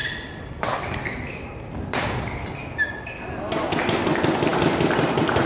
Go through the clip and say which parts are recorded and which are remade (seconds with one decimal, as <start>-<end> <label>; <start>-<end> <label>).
0.0-5.5 recorded